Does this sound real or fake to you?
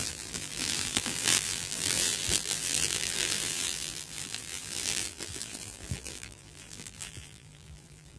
fake